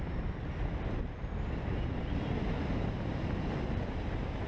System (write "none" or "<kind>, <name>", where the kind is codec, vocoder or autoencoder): none